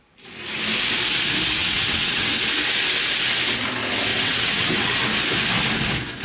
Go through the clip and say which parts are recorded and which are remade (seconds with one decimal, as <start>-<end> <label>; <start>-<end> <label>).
0.0-1.6 recorded; 1.6-2.4 remade; 2.4-4.1 recorded; 4.1-5.0 remade; 5.0-6.2 recorded